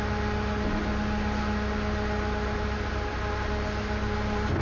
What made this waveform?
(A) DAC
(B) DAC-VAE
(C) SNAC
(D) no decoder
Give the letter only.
D